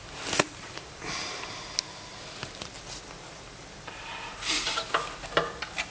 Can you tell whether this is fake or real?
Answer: real